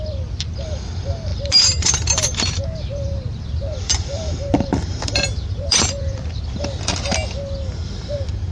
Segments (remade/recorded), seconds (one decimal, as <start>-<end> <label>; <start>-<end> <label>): 0.0-1.3 recorded; 1.3-6.4 remade; 6.4-8.5 recorded